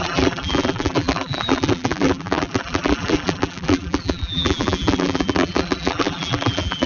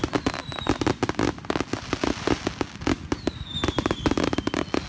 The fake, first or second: first